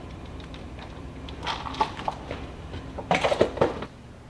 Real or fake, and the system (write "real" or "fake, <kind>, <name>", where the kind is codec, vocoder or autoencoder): fake, vocoder, BigVGAN v2